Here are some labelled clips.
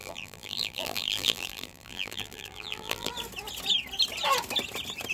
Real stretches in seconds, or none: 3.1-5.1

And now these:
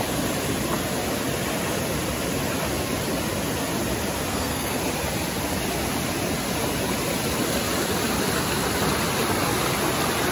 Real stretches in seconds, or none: 0.0-4.3; 4.8-10.3

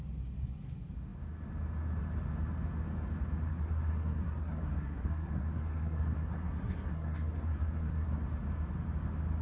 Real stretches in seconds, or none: 0.0-3.5; 8.2-9.4

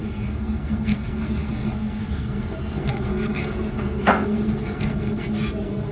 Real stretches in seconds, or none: none

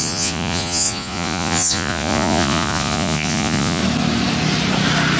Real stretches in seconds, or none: 3.8-5.2

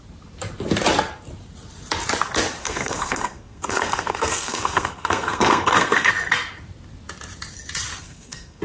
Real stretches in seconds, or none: 0.0-2.6; 6.1-8.0